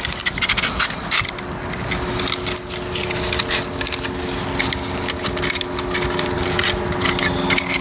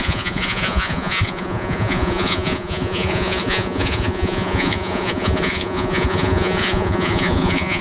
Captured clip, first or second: first